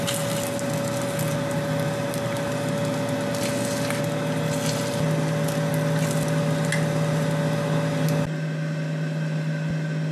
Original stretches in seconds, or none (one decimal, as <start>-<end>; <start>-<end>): 0.0-10.1